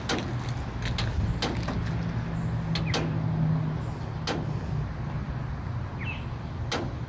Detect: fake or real real